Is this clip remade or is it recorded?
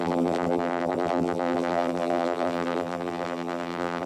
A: remade